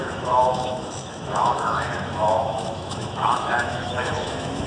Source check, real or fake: fake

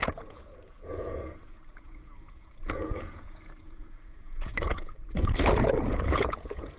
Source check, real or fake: fake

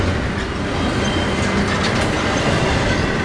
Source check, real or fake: real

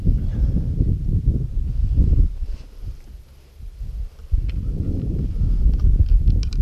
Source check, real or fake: real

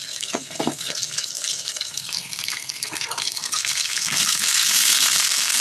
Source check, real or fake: fake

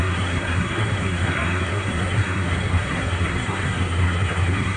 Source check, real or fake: fake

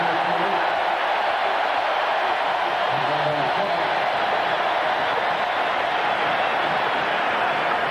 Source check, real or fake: real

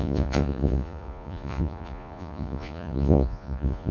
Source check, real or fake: fake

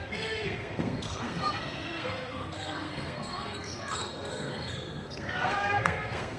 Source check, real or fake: fake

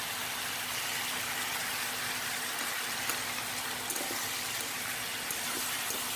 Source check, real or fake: real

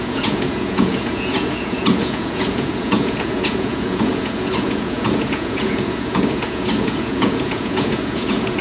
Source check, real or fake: fake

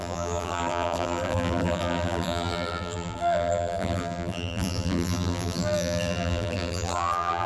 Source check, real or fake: fake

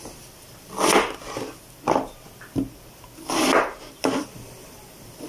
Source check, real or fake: real